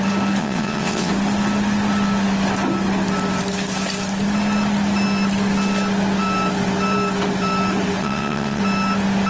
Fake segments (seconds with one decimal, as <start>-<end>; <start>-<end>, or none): 0.4-1.1; 8.0-8.6